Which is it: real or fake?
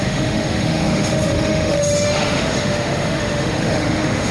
fake